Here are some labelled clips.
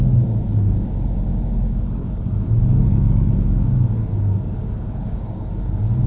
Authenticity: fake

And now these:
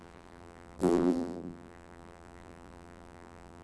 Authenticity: fake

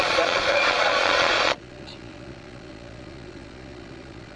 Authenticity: fake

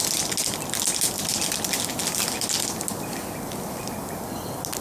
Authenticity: real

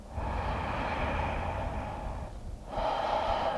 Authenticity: real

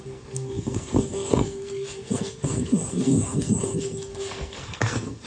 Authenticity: fake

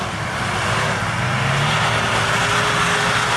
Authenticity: real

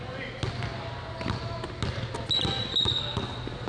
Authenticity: real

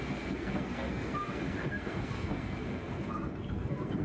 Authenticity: fake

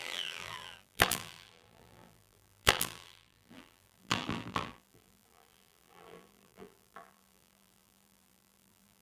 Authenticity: fake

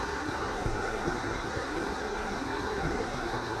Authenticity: fake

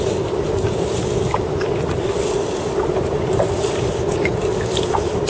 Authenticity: real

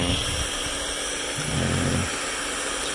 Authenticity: real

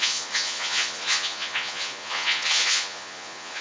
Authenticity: fake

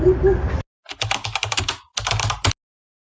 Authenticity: real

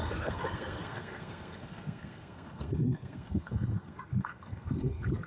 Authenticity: fake